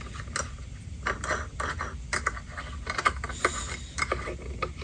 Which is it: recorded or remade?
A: recorded